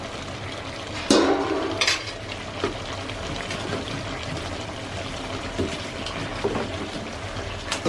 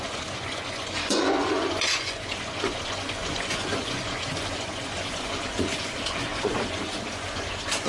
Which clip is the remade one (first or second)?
second